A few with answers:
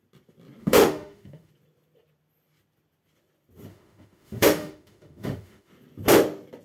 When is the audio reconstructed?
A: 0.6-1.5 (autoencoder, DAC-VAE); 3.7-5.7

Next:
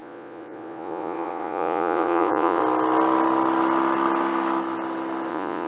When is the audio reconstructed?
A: 0.0-2.6 (vocoder, Vocos); 5.3-5.7

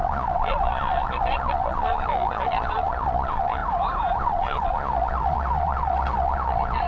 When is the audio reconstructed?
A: 0.0-3.6 (vocoder, Vocos); 4.2-6.9

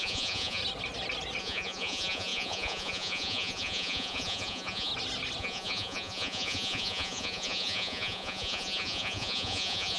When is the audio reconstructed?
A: 0.0-0.6 (vocoder, Vocos); 1.4-4.9; 5.4-10.0

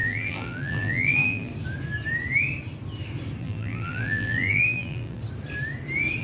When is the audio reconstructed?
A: 0.0-1.5 (vocoder, BigVGAN v2); 3.4-5.2